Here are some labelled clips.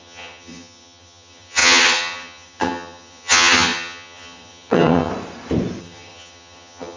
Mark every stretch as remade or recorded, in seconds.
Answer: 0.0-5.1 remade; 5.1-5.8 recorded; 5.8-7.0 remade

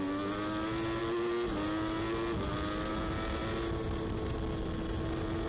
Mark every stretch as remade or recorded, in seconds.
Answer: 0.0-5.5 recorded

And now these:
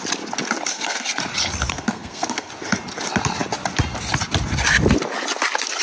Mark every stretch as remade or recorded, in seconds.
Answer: 0.0-0.7 recorded; 0.7-1.2 remade; 1.2-1.7 recorded; 1.7-2.5 remade; 2.5-5.8 recorded

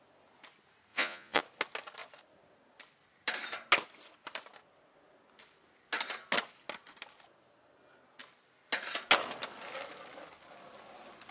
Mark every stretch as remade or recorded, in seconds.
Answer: 0.0-0.9 recorded; 0.9-1.4 remade; 1.4-11.3 recorded

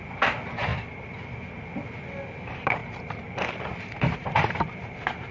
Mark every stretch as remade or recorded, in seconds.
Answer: 0.0-0.7 remade; 0.7-2.4 recorded; 2.4-5.3 remade

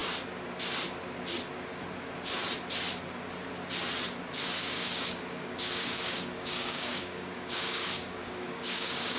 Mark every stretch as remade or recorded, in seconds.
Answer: 0.0-4.6 recorded; 4.6-9.2 remade

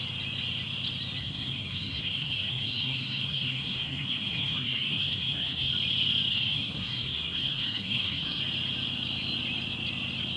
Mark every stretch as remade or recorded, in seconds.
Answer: 0.0-1.2 recorded; 1.2-5.7 remade; 5.7-6.3 recorded; 6.3-8.4 remade; 8.4-10.4 recorded